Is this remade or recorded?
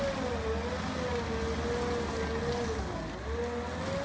recorded